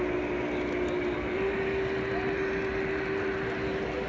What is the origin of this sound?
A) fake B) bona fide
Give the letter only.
B